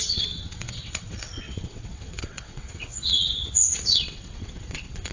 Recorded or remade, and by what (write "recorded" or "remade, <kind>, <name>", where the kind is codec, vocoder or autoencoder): remade, vocoder, WaveNeXt